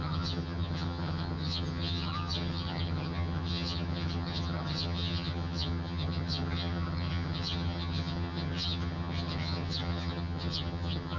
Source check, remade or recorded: remade